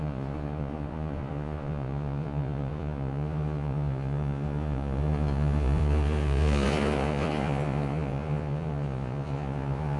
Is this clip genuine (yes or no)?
no